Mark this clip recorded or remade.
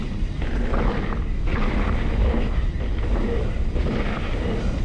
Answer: recorded